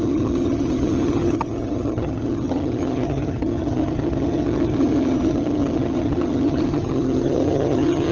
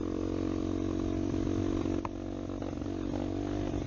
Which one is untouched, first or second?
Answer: second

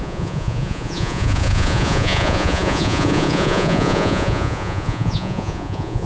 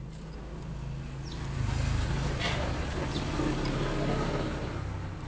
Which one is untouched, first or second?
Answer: second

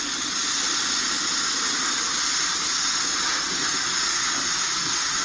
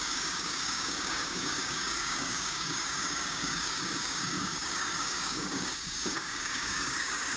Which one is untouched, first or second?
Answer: first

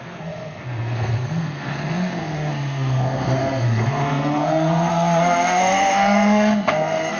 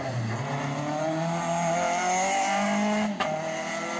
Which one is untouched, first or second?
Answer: second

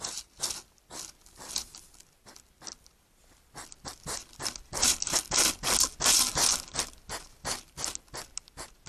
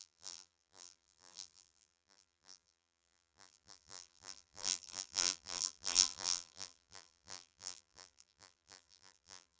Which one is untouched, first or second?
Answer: first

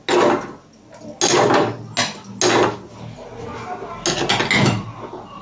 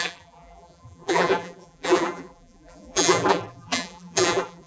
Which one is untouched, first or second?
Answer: first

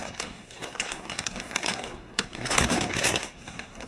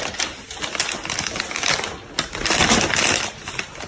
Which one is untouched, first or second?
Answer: second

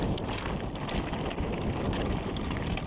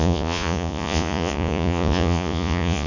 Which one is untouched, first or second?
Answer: first